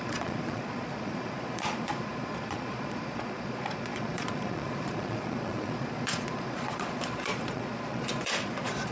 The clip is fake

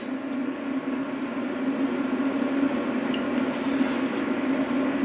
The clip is real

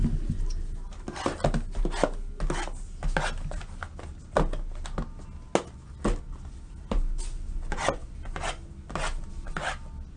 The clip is real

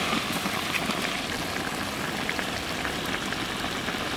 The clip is real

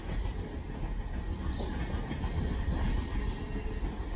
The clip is real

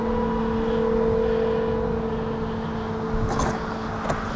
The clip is real